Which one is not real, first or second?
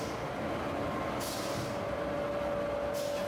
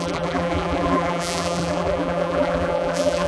second